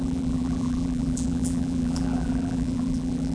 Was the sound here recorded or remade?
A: remade